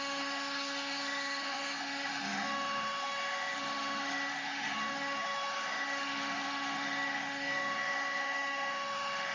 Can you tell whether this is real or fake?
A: fake